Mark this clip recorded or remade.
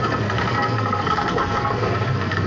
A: remade